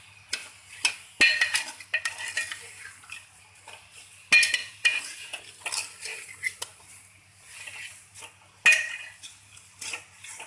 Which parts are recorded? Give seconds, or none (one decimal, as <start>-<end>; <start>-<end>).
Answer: 0.0-4.6; 5.4-10.5